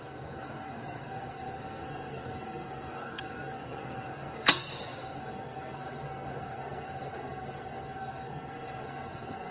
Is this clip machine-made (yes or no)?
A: yes